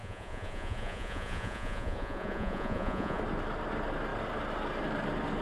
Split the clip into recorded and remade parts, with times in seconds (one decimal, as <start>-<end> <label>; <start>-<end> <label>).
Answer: 0.0-3.2 remade; 3.2-5.4 recorded